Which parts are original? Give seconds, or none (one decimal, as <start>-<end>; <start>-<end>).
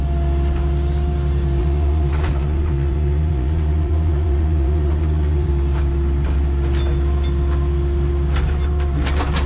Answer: 0.0-1.6; 5.5-9.5